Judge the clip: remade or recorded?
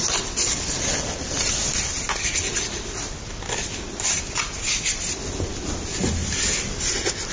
recorded